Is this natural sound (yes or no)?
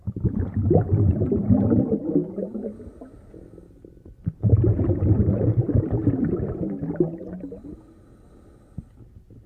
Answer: yes